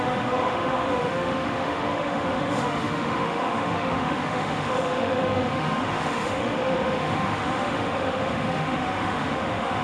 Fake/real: fake